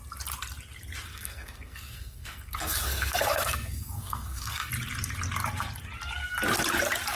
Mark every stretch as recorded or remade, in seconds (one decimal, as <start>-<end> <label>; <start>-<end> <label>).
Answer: 0.0-1.1 recorded; 1.1-4.7 remade; 4.7-7.1 recorded